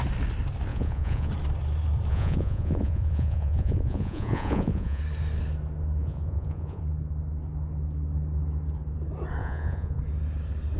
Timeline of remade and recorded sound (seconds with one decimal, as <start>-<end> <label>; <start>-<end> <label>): 0.0-0.7 recorded; 0.7-1.3 remade; 1.3-2.1 recorded; 2.1-5.0 remade; 5.0-6.0 recorded; 6.0-6.8 remade; 6.8-9.4 recorded; 9.4-10.0 remade; 10.0-10.8 recorded